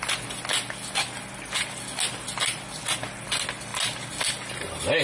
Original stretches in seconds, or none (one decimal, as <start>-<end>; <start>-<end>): 0.0-5.0